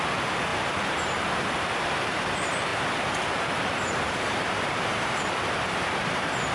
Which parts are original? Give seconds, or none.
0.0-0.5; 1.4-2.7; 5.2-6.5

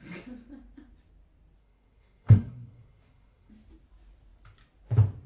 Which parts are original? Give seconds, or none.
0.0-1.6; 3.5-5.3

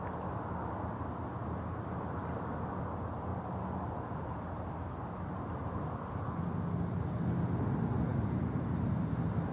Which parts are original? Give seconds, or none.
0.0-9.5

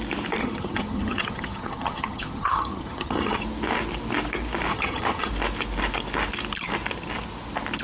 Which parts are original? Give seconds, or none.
0.0-0.4; 3.4-4.7; 5.3-7.8